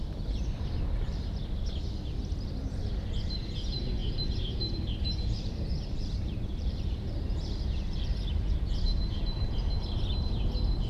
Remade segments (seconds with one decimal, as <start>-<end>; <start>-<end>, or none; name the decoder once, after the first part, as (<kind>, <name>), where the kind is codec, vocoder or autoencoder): 4.0-9.2 (vocoder, BigVGAN v2)